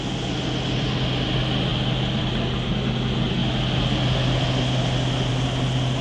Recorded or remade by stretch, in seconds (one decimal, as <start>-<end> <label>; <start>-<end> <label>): 0.0-6.0 recorded